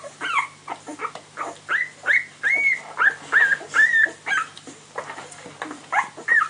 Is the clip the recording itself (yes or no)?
yes